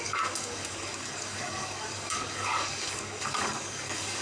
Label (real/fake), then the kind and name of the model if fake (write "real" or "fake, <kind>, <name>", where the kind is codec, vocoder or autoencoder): fake, codec, DAC